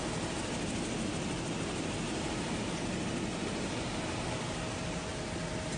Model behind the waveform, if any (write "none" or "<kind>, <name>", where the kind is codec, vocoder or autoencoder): none